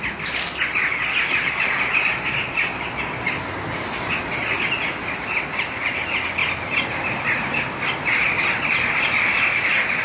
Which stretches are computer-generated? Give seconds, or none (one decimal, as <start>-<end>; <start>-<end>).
none